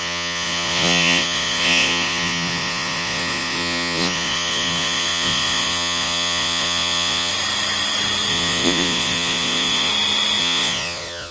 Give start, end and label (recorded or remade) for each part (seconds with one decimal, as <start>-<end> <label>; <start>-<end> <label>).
0.0-7.3 remade; 7.3-8.3 recorded; 8.3-9.9 remade; 9.9-10.4 recorded; 10.4-11.3 remade